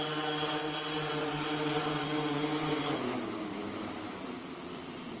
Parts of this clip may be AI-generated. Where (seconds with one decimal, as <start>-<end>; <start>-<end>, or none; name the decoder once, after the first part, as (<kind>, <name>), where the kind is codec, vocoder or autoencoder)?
1.8-2.8 (codec, DAC)